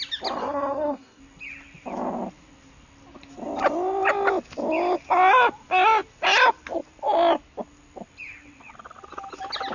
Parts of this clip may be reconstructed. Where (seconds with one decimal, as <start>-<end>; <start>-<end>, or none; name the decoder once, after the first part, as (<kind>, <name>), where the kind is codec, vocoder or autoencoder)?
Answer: 0.4-1.2 (codec, SNAC)